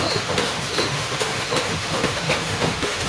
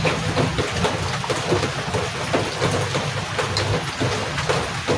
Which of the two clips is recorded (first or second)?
second